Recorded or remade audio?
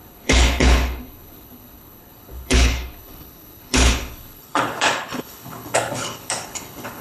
remade